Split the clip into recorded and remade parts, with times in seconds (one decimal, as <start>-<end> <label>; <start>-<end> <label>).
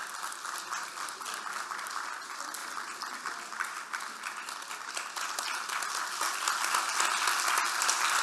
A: 0.0-8.2 recorded